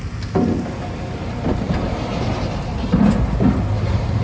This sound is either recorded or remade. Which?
recorded